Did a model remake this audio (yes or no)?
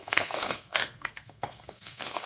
yes